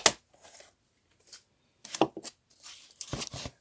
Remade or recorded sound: recorded